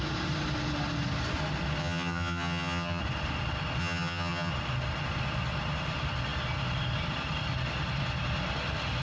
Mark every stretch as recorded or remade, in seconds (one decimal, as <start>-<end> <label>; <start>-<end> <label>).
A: 0.0-1.8 recorded; 1.8-3.0 remade; 3.0-3.8 recorded; 3.8-4.5 remade; 4.5-9.0 recorded